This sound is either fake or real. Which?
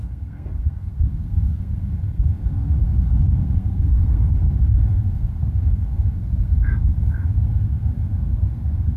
fake